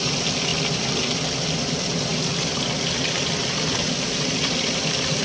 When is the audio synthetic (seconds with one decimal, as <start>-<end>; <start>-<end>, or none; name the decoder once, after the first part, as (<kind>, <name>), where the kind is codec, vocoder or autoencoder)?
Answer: none